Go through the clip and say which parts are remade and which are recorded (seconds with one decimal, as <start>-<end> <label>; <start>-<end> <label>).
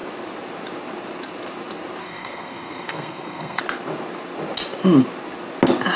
0.0-2.0 recorded; 2.0-3.6 remade; 3.6-6.0 recorded